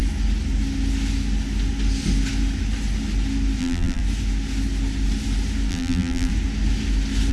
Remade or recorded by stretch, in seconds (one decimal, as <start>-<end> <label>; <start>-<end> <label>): 0.0-3.6 recorded; 3.6-4.0 remade; 4.0-5.7 recorded; 5.7-6.3 remade; 6.3-7.3 recorded